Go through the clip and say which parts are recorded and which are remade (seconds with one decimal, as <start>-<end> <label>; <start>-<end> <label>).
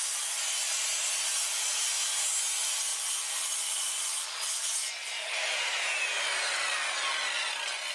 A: 0.0-0.7 remade; 0.7-7.9 recorded